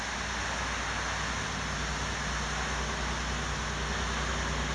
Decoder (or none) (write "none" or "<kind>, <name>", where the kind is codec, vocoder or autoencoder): none